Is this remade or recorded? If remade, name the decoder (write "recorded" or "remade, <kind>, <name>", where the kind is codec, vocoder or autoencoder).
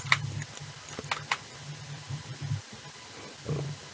recorded